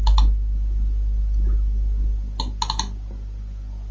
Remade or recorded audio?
recorded